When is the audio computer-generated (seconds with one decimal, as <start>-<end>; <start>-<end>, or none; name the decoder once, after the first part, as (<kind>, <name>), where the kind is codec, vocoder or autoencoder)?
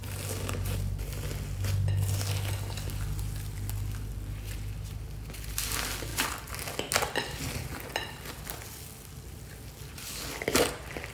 none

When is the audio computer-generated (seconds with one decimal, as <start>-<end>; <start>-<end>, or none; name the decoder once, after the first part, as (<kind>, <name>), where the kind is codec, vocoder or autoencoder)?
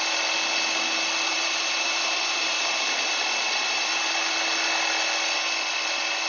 1.3-4.3 (vocoder, BigVGAN v2)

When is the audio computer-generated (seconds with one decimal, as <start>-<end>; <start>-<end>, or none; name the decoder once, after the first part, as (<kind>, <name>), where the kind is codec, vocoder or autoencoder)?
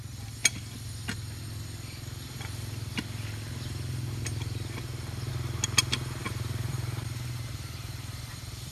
6.2-8.7 (vocoder, BigVGAN v2)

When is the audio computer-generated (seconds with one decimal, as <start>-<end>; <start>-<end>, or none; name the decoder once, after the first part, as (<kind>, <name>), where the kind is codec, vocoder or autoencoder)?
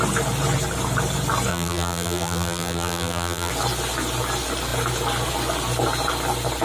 1.5-3.5 (vocoder, BigVGAN v2)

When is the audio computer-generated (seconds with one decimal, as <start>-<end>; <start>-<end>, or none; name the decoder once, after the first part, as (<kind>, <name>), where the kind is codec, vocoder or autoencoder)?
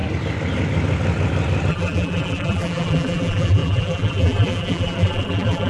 1.7-5.7 (vocoder, BigVGAN v2)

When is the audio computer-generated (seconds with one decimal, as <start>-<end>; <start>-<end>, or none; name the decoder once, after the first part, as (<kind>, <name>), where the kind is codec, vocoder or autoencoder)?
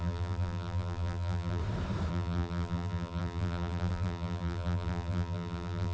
0.0-1.6 (vocoder, BigVGAN v2); 2.1-5.9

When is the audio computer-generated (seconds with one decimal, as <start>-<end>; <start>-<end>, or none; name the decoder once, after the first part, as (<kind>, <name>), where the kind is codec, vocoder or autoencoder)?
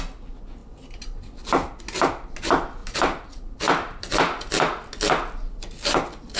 2.8-4.5 (vocoder, BigVGAN v2)